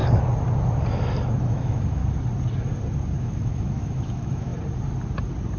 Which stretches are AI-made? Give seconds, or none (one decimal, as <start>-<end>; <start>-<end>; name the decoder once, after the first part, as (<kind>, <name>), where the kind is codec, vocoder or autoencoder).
1.4-2.0 (autoencoder, DAC-VAE); 3.2-4.5